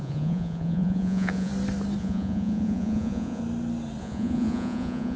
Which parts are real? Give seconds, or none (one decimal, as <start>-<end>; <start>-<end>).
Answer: 1.5-2.0; 3.4-4.0